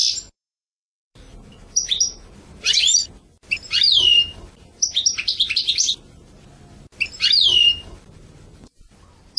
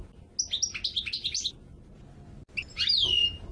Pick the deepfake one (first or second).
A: first